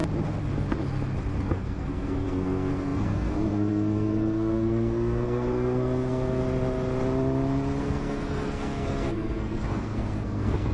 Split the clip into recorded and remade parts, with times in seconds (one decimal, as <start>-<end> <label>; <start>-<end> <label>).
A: 0.0-1.4 recorded; 1.4-6.4 remade; 6.4-7.8 recorded; 7.8-10.7 remade